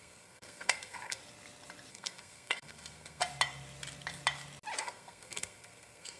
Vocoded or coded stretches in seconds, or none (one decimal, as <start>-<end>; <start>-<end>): 0.0-1.2; 1.9-3.2; 4.8-6.2